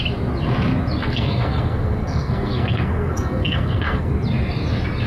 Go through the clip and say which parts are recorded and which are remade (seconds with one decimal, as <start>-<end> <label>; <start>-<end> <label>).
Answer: 0.0-1.0 recorded; 1.0-4.1 remade; 4.1-5.1 recorded